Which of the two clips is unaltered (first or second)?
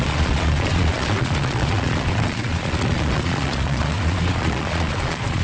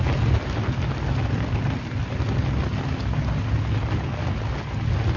second